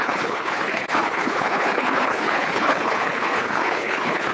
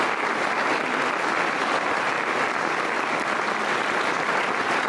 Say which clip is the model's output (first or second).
first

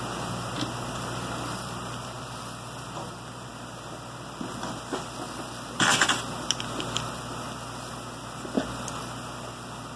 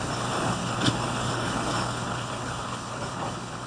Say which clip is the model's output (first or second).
second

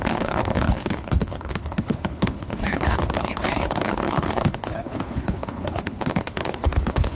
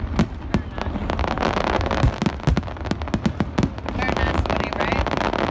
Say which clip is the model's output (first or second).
first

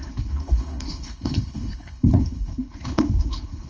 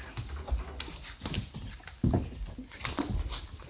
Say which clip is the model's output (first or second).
first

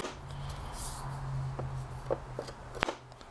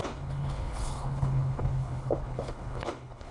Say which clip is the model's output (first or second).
second